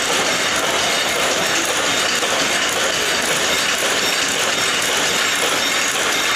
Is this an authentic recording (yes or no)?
yes